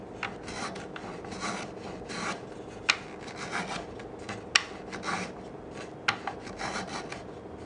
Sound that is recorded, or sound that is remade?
recorded